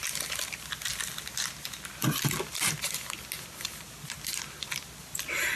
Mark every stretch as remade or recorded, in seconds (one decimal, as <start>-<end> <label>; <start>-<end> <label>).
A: 0.0-5.6 recorded